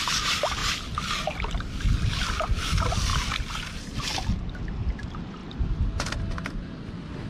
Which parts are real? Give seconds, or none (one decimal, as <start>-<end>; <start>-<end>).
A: 0.0-7.3